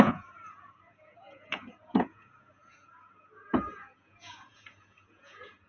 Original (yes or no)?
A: no